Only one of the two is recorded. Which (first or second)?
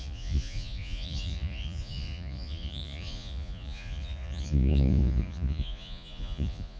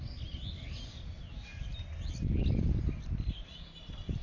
second